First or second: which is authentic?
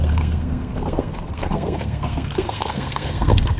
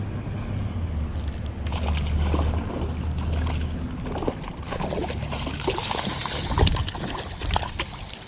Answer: second